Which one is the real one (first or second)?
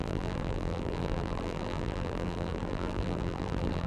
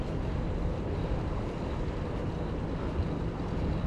second